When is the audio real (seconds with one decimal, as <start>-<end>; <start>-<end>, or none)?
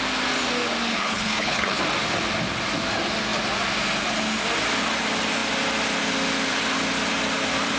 0.0-1.0; 1.8-7.8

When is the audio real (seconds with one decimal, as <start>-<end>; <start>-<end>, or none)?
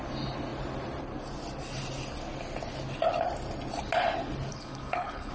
0.0-4.5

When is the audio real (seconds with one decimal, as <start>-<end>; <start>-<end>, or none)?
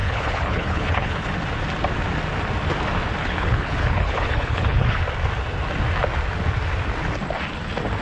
1.3-3.2; 5.0-8.0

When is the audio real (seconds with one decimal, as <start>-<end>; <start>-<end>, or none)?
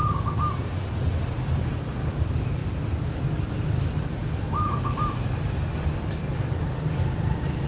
0.0-7.7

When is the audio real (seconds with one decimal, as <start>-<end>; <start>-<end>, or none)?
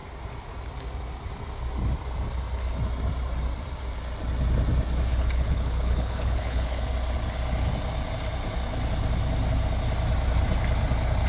0.0-5.1; 6.8-11.3